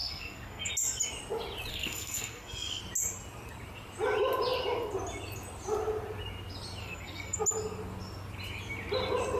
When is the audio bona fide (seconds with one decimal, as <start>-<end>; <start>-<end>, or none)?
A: 0.7-1.7; 2.8-6.8; 7.4-9.4